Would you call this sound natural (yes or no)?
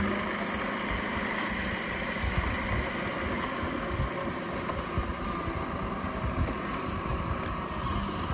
yes